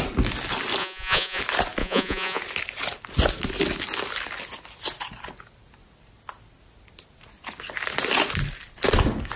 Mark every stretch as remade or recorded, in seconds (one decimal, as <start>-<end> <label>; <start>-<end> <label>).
0.0-0.8 recorded; 0.8-1.4 remade; 1.4-1.8 recorded; 1.8-2.4 remade; 2.4-9.4 recorded